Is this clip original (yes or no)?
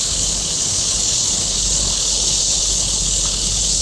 no